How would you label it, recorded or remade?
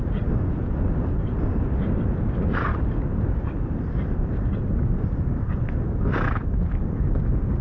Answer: recorded